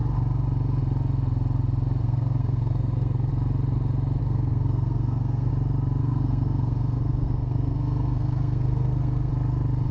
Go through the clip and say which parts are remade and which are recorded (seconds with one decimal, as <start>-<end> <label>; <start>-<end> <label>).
0.0-2.0 recorded; 2.0-3.3 remade; 3.3-4.2 recorded; 4.2-5.5 remade; 5.5-6.0 recorded; 6.0-9.3 remade; 9.3-9.9 recorded